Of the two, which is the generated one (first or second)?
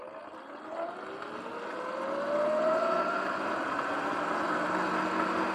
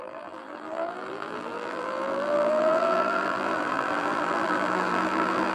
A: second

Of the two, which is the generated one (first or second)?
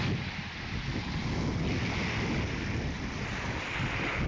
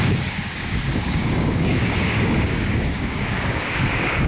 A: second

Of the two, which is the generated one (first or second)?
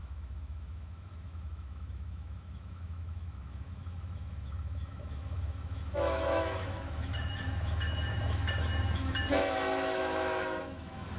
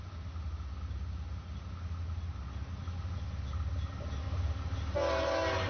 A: first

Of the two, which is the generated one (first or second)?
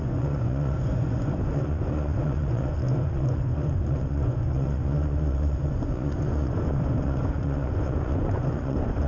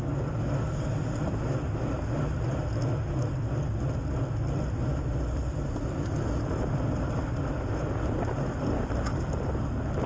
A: first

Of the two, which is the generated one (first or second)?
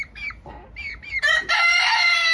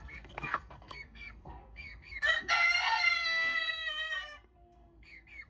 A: second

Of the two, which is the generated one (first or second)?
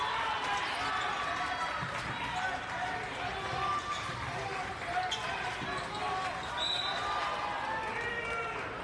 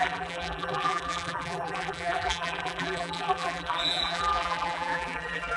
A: second